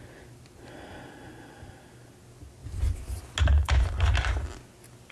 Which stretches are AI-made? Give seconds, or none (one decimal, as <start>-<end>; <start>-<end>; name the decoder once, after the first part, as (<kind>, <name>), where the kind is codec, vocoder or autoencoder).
none